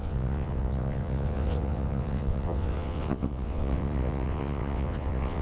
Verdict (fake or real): fake